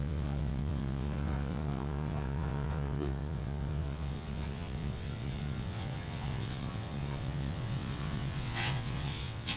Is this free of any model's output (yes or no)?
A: no